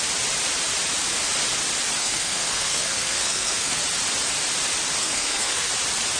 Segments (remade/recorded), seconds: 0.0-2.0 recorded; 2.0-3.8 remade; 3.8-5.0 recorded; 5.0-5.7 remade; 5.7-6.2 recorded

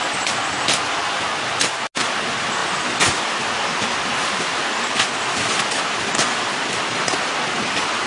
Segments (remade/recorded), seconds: 0.0-8.1 recorded

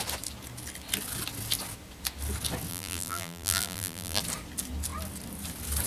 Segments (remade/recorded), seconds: 0.0-2.7 recorded; 2.7-4.2 remade; 4.2-5.9 recorded